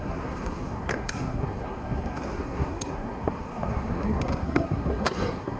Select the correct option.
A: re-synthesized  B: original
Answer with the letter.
A